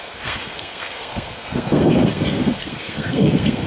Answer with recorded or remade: remade